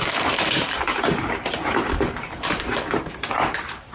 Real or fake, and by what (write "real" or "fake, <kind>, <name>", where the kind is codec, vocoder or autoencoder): fake, vocoder, BigVGAN v2